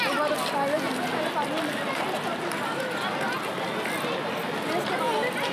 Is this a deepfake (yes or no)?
no